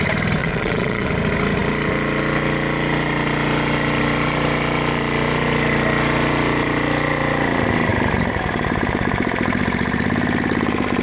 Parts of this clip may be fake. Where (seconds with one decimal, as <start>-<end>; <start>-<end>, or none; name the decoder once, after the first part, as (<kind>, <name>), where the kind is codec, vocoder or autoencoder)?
0.4-1.1 (vocoder, Vocos)